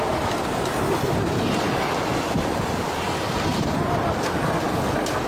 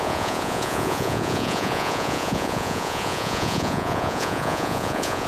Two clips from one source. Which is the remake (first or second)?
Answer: second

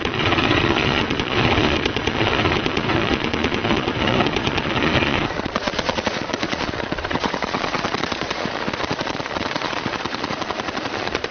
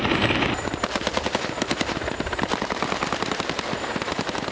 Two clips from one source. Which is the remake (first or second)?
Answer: first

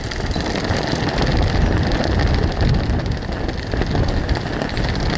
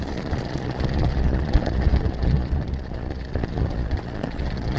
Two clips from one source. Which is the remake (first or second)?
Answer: second